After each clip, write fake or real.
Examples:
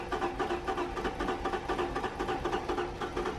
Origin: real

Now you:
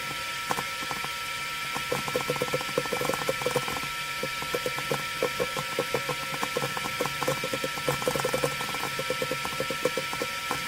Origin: real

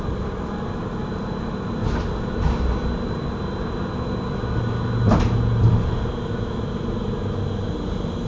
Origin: real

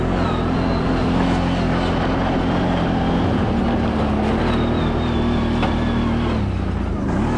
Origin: real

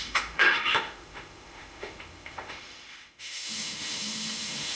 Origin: fake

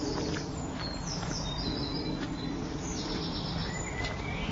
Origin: real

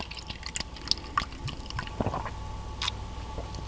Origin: real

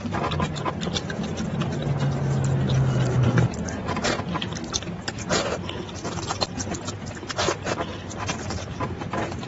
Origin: real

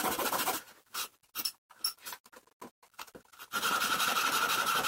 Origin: real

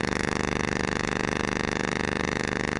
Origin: fake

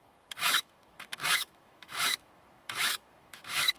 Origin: fake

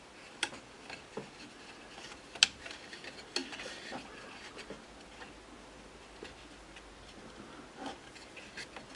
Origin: real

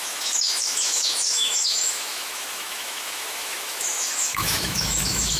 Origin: fake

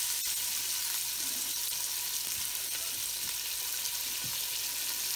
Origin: real